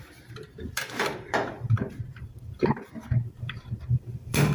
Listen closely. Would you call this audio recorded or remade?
remade